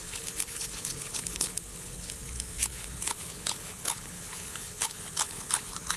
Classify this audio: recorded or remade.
remade